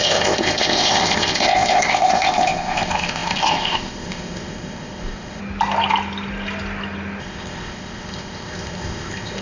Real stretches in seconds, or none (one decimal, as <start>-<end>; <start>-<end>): 5.4-7.2

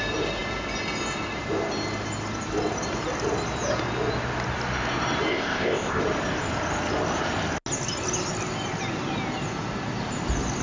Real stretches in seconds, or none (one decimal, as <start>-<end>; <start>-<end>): 0.0-5.3; 6.0-10.6